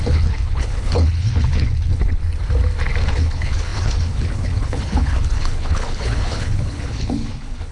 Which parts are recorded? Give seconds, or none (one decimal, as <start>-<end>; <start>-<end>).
2.2-3.1